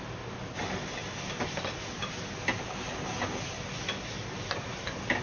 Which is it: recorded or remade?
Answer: recorded